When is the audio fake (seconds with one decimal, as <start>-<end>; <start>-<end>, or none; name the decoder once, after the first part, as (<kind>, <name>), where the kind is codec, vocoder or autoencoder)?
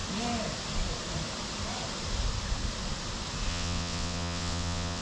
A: 3.5-5.0 (vocoder, WaveNeXt)